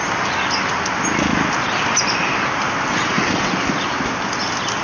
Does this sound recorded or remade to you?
recorded